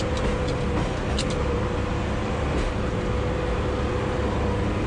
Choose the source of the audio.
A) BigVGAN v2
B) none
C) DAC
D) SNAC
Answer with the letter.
B